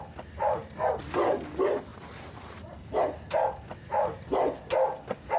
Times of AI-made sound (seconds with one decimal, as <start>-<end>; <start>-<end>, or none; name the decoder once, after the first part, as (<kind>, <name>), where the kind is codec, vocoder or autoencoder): 1.9-2.8 (vocoder, BigVGAN v2)

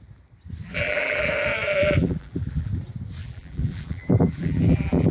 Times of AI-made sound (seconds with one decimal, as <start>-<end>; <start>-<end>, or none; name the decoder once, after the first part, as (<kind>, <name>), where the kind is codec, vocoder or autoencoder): 0.7-1.3 (vocoder, BigVGAN v2); 1.8-2.7; 3.2-5.1